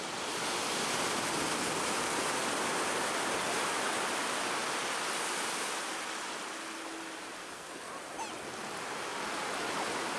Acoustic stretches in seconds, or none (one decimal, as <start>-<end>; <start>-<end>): 0.0-7.4; 7.9-10.2